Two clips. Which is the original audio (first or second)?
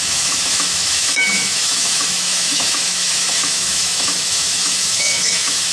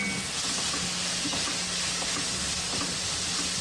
second